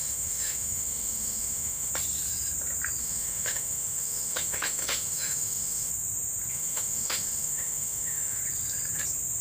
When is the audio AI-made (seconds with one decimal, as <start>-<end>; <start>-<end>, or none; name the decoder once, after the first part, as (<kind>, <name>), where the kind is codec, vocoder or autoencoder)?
0.0-1.9 (autoencoder, DAC-VAE); 3.0-5.9; 6.5-8.4